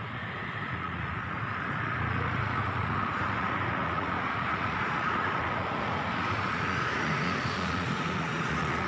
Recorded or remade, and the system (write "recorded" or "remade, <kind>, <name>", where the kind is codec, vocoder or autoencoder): remade, vocoder, Vocos